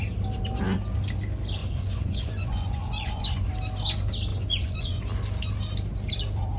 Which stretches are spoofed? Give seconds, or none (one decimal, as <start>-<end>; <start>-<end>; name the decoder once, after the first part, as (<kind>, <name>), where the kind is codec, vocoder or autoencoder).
1.6-3.5 (vocoder, Vocos); 4.3-5.0